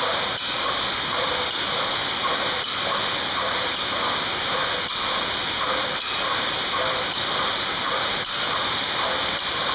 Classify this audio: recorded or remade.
recorded